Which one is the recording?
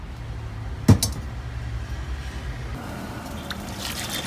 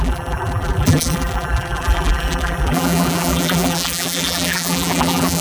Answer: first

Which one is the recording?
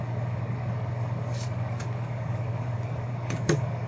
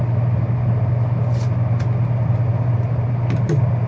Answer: second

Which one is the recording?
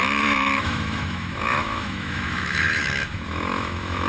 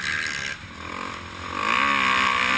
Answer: second